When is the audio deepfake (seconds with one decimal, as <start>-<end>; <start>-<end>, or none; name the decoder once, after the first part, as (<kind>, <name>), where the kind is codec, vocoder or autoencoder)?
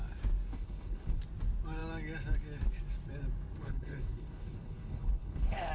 0.5-1.2 (codec, HILCodec); 3.6-5.7